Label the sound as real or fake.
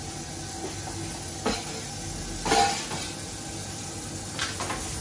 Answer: real